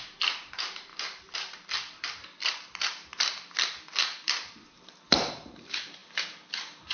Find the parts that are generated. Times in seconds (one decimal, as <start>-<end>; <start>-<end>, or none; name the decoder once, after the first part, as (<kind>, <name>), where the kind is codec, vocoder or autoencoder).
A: 0.0-6.9 (vocoder, BigVGAN v2)